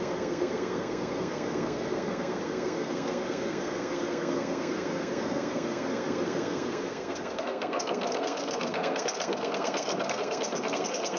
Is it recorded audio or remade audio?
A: remade